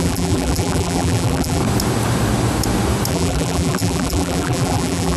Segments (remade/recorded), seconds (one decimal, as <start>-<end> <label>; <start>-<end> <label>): 0.0-1.6 remade; 1.6-3.1 recorded; 3.1-5.2 remade